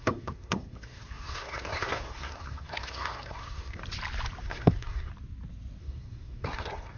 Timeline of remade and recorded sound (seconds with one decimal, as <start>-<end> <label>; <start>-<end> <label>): 0.0-3.8 remade; 3.8-4.4 recorded; 4.4-5.1 remade; 5.1-5.8 recorded; 5.8-7.0 remade